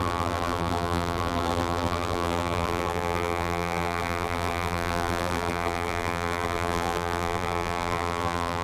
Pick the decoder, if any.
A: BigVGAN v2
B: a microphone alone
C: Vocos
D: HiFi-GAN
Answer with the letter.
A